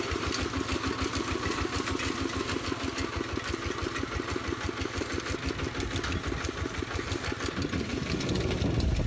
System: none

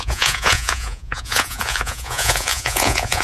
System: vocoder, Vocos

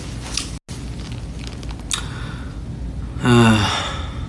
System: none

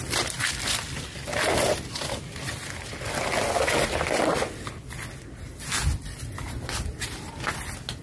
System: none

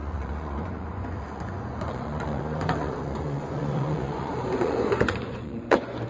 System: vocoder, Vocos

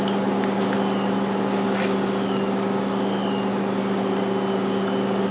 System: none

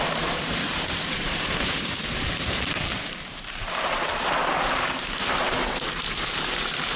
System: vocoder, BigVGAN v2